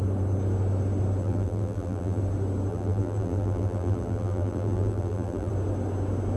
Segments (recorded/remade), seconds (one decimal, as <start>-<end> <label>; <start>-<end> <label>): 0.0-1.2 recorded; 1.2-2.2 remade; 2.2-2.7 recorded; 2.7-5.5 remade; 5.5-6.4 recorded